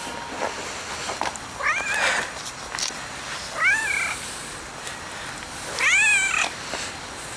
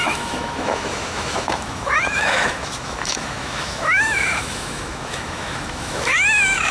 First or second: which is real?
first